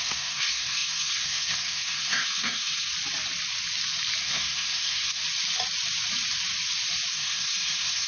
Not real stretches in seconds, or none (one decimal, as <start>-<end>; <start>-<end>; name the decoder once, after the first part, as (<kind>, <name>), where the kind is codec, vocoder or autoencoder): 0.0-2.9 (codec, SNAC); 4.2-5.2; 7.1-8.1